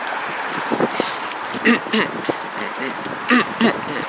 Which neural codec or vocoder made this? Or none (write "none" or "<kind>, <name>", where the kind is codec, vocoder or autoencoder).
none